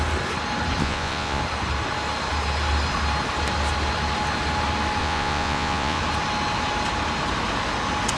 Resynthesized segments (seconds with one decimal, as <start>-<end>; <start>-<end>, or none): 0.8-1.4; 5.0-6.0